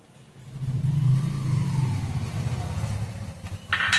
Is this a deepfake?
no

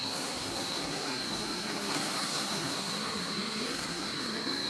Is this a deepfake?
yes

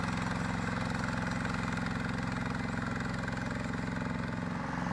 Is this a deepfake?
no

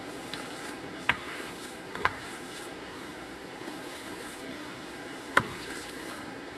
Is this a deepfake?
yes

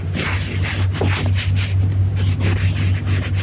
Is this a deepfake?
no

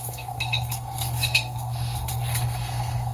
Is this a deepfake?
yes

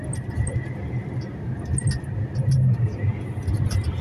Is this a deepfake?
no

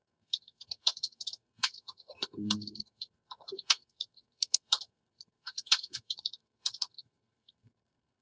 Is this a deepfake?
yes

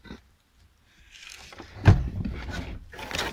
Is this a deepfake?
no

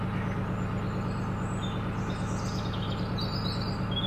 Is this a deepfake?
no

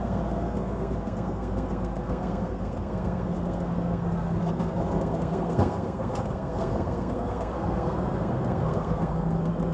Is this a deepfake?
yes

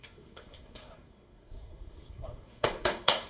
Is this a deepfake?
yes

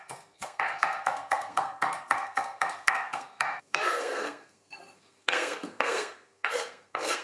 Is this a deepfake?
yes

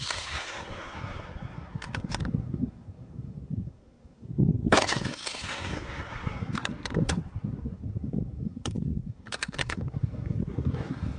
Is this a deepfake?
yes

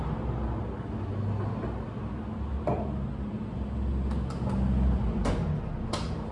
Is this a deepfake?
no